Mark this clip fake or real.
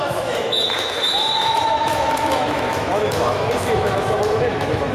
fake